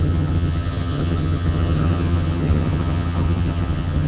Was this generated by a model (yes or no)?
yes